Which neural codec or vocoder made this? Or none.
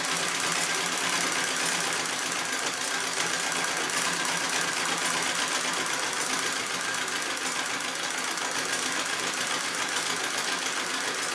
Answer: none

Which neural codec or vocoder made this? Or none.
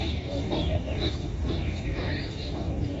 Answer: codec, DAC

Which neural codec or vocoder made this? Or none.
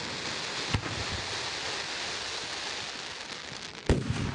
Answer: none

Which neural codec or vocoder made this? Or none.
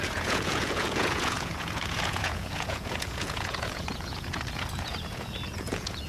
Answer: vocoder, Vocos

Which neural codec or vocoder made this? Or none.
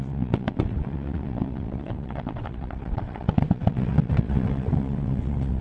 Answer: vocoder, WaveNeXt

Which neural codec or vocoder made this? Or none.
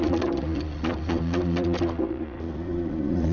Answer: vocoder, Vocos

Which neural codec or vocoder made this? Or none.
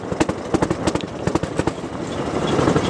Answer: none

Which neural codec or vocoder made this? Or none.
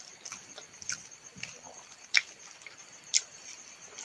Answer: vocoder, BigVGAN v2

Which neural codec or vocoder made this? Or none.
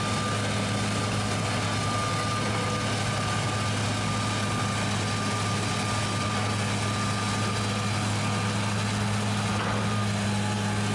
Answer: none